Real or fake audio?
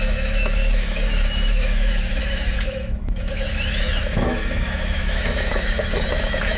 fake